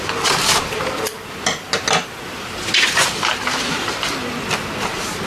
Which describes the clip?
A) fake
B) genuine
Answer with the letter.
B